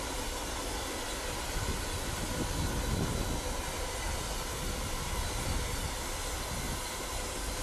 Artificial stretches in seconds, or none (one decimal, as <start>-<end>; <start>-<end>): none